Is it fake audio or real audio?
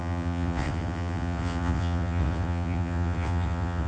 fake